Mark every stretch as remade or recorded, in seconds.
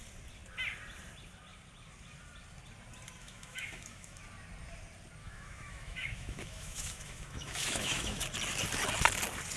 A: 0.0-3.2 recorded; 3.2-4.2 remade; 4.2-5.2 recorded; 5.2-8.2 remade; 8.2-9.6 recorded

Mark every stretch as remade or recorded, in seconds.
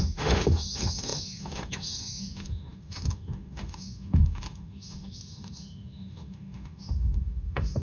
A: 0.0-7.8 remade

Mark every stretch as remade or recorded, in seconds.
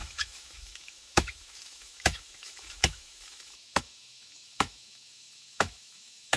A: 0.0-6.4 remade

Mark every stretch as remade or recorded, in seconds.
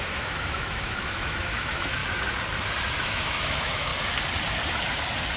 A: 0.0-2.0 remade; 2.0-3.0 recorded; 3.0-3.9 remade; 3.9-5.4 recorded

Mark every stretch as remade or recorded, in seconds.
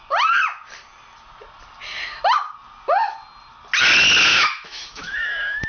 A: 0.0-4.3 recorded; 4.3-5.7 remade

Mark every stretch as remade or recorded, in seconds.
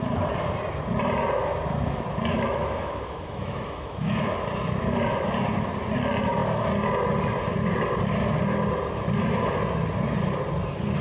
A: 0.0-2.3 recorded; 2.3-4.4 remade; 4.4-11.0 recorded